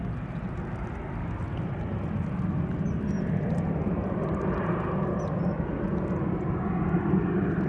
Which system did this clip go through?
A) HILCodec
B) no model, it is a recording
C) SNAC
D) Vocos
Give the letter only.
B